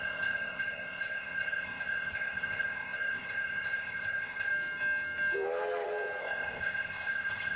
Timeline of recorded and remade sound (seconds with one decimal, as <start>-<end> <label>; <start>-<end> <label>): 0.0-4.5 remade; 4.5-6.2 recorded; 6.2-7.6 remade